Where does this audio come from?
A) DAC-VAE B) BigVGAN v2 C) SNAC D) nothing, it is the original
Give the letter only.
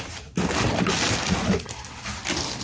D